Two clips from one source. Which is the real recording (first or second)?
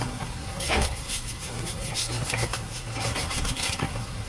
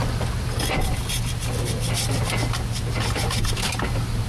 second